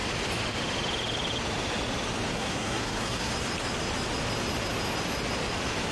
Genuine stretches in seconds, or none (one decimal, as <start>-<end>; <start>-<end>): 0.0-2.3; 3.3-5.9